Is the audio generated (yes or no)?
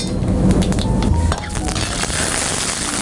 no